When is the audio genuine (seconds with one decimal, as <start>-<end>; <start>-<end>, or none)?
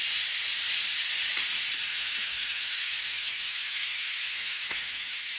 0.0-1.9